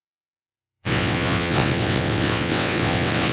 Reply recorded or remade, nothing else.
remade